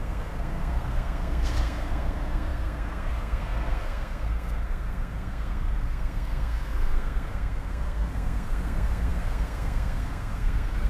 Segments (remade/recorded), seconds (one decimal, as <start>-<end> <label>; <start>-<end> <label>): 0.0-10.9 remade